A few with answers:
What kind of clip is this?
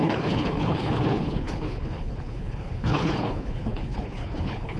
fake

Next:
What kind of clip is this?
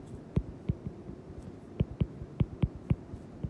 real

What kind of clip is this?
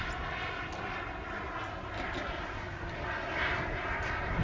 real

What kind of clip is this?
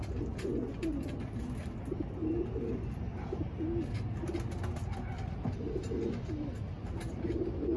real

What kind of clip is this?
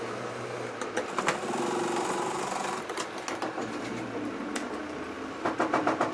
real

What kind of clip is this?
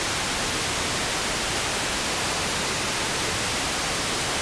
real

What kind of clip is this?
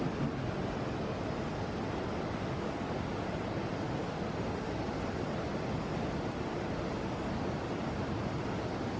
real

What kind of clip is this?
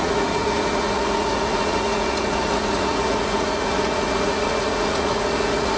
fake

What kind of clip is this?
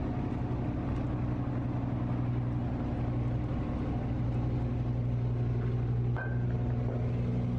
real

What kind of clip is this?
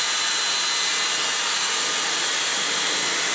real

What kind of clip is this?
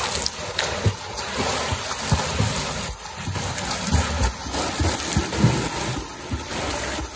real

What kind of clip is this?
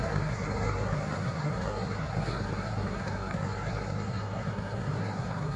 fake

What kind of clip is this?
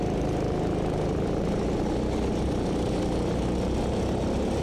real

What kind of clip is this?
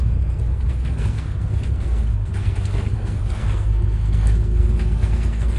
fake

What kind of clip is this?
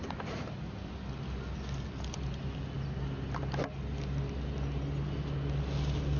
real